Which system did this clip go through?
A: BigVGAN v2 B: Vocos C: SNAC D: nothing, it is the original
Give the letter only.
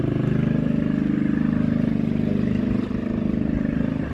D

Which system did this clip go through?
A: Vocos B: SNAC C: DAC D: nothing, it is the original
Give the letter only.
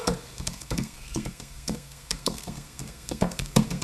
B